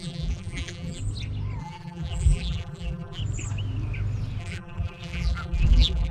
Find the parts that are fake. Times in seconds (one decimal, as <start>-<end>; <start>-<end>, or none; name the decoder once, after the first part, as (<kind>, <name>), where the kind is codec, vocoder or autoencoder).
0.0-1.0 (vocoder, BigVGAN v2); 1.6-3.2; 4.4-6.1

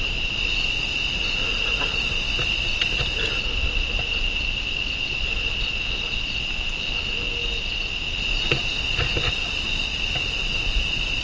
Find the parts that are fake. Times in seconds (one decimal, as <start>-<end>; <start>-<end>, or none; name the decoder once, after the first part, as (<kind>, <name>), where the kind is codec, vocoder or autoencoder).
none